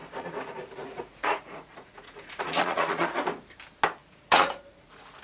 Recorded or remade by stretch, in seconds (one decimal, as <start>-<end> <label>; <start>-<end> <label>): 0.0-3.1 remade; 3.1-4.0 recorded; 4.0-5.2 remade